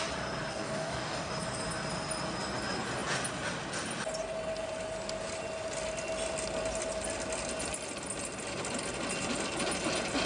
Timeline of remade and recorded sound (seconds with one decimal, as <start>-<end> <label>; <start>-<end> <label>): 0.0-0.5 recorded; 0.5-1.3 remade; 1.3-10.3 recorded